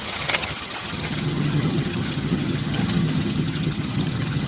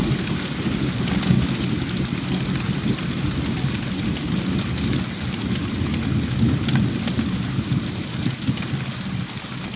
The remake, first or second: first